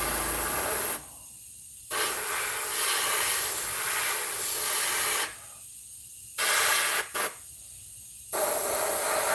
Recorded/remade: recorded